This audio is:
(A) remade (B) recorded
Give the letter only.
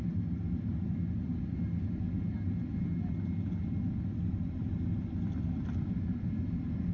B